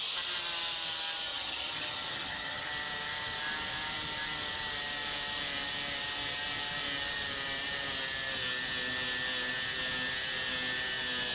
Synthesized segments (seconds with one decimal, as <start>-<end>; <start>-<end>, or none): 1.3-2.7